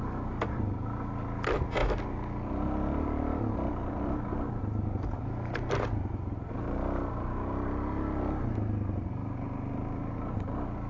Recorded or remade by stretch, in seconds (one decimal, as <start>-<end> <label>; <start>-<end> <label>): 0.0-10.9 recorded